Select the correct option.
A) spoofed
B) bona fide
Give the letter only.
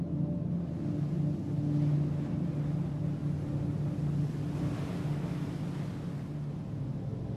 B